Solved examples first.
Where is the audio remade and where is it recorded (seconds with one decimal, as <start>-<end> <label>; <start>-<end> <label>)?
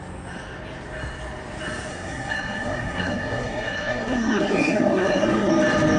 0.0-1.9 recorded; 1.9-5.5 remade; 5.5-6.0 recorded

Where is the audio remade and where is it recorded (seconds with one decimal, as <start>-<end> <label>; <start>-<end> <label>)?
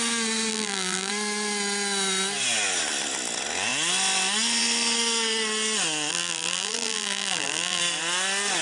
0.0-0.5 recorded; 0.5-1.1 remade; 1.1-6.1 recorded; 6.1-7.8 remade; 7.8-8.6 recorded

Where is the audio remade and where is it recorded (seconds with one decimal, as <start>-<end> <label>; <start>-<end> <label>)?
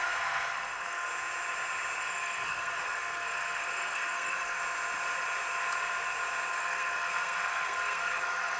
0.0-1.1 remade; 1.1-2.0 recorded; 2.0-4.6 remade; 4.6-6.5 recorded; 6.5-8.6 remade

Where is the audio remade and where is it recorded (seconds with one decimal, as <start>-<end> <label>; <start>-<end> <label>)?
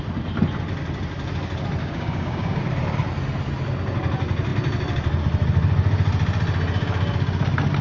0.0-1.8 recorded; 1.8-2.6 remade; 2.6-7.8 recorded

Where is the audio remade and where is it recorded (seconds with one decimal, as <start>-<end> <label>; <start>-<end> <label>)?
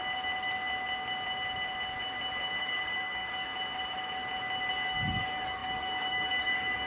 0.0-2.6 recorded; 2.6-3.5 remade; 3.5-4.7 recorded; 4.7-6.9 remade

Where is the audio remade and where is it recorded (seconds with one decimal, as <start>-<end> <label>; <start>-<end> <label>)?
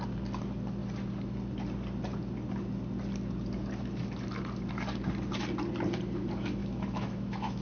0.0-6.6 recorded; 6.6-7.6 remade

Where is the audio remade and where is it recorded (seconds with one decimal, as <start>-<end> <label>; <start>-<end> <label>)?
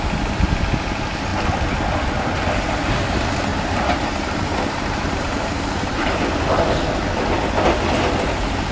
0.0-3.5 recorded; 3.5-6.2 remade; 6.2-8.7 recorded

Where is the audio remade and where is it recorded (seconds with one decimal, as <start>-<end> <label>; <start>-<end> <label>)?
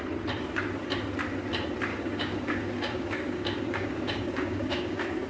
0.0-1.9 recorded; 1.9-5.3 remade